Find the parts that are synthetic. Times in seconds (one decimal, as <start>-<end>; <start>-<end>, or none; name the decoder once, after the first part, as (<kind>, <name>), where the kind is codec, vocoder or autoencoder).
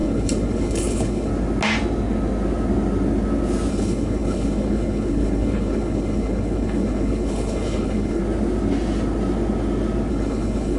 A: 0.0-1.3 (codec, HILCodec); 3.7-8.2; 10.1-10.8